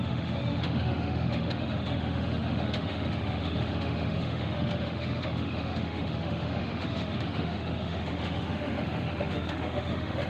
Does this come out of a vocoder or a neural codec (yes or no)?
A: yes